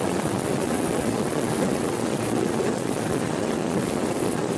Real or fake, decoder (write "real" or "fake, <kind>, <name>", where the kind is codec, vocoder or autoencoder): fake, vocoder, Vocos